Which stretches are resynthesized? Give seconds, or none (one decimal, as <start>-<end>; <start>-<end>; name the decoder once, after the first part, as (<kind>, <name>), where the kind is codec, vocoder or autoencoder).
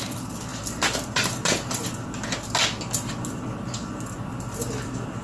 none